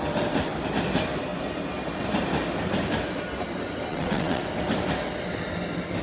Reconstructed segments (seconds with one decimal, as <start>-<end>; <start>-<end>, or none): 3.9-4.4

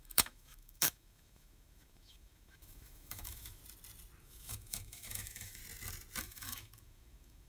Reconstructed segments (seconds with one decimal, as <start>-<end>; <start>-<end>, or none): 0.0-3.6; 4.2-5.6; 6.2-7.5

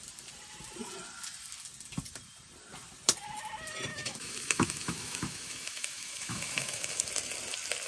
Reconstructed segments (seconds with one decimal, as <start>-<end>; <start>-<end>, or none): 3.9-7.0

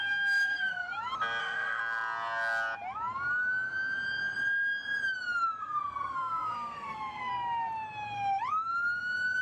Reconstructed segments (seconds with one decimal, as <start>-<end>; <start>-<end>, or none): 0.0-0.8; 1.4-1.8; 5.6-7.3

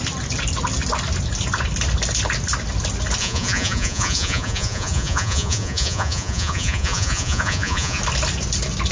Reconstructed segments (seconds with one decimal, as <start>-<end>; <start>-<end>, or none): 3.2-8.0